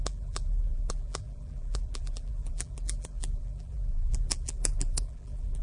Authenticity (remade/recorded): remade